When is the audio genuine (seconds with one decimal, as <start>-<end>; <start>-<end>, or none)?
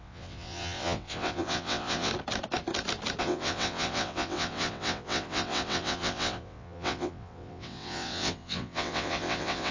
2.1-3.2